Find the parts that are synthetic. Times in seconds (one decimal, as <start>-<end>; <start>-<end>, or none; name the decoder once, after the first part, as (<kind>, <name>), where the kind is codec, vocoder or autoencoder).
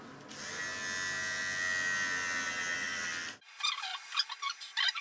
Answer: none